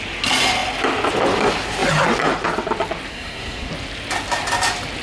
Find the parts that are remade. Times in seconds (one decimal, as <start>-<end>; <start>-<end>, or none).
3.1-3.7